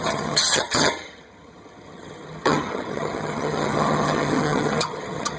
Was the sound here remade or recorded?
remade